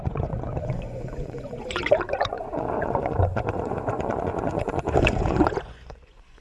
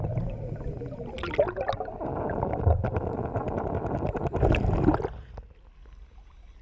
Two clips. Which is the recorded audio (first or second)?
second